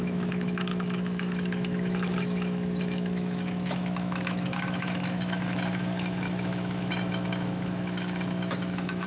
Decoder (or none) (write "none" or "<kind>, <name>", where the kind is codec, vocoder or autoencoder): autoencoder, DAC-VAE